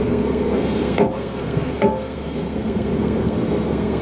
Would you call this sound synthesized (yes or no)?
yes